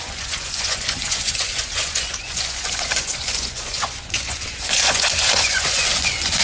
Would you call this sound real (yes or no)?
no